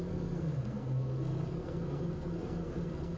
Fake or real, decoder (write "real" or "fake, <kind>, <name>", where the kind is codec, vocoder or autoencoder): fake, codec, SNAC